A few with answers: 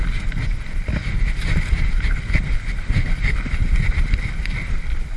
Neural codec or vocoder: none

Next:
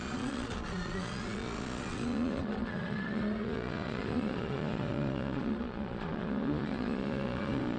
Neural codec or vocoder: vocoder, Vocos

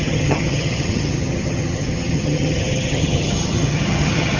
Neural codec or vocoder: vocoder, HiFi-GAN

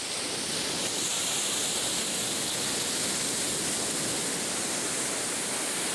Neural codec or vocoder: none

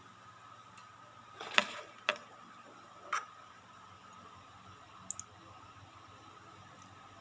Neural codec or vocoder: none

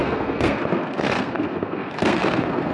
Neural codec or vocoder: codec, SNAC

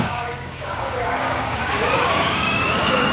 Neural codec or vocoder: codec, DAC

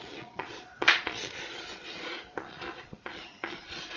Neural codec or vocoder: vocoder, Vocos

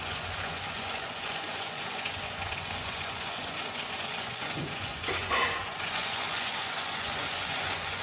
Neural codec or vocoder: vocoder, Vocos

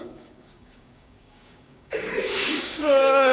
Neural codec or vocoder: codec, DAC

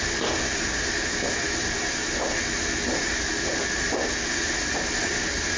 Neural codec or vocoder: none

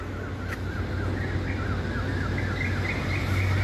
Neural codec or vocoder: none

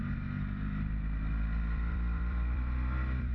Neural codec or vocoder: vocoder, BigVGAN v2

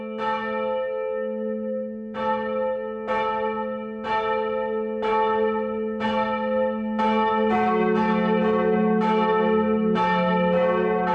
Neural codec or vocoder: none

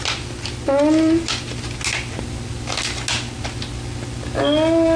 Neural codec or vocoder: none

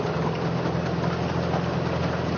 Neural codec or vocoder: none